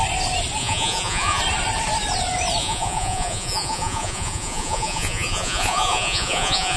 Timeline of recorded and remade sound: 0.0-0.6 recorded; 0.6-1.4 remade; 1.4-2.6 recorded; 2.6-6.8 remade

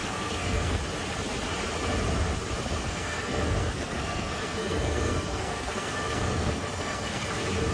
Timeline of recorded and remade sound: 0.0-0.8 remade; 0.8-2.7 recorded; 2.7-7.3 remade; 7.3-7.7 recorded

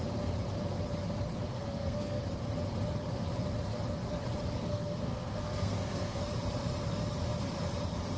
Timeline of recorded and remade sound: 0.0-1.4 recorded; 1.4-2.2 remade; 2.2-4.6 recorded; 4.6-6.2 remade; 6.2-8.2 recorded

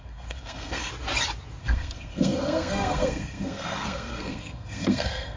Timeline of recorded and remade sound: 0.0-0.9 remade; 0.9-1.6 recorded; 1.6-5.4 remade

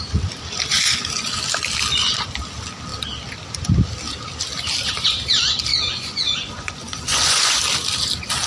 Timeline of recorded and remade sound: 0.0-5.7 recorded; 5.7-7.6 remade; 7.6-8.5 recorded

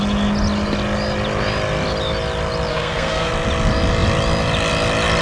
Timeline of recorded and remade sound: 0.0-2.7 recorded; 2.7-3.3 remade; 3.3-5.2 recorded

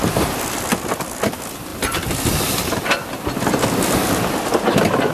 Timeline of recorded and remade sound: 0.0-5.1 recorded

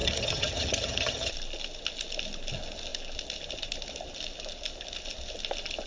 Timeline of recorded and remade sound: 0.0-1.3 remade; 1.3-5.9 recorded